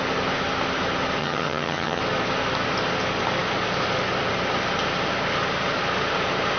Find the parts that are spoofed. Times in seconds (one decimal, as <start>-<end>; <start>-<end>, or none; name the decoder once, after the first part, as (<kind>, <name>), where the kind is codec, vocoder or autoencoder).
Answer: 1.2-2.0 (vocoder, HiFi-GAN)